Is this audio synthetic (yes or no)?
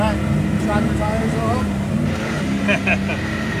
no